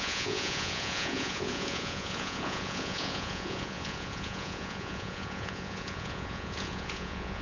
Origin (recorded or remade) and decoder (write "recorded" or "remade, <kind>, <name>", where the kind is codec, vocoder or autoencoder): remade, vocoder, Vocos